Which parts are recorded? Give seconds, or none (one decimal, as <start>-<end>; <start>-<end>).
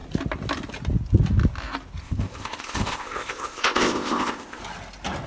0.0-2.0; 4.6-5.3